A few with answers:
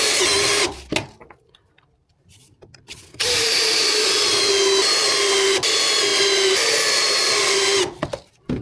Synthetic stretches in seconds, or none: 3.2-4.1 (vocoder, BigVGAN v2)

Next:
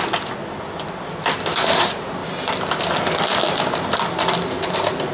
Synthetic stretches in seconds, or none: none